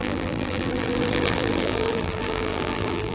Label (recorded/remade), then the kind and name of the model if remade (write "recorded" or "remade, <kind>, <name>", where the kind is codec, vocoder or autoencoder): remade, vocoder, BigVGAN v2